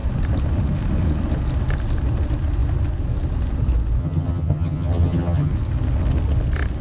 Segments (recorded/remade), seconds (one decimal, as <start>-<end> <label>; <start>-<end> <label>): 0.0-4.0 recorded; 4.0-5.5 remade; 5.5-6.8 recorded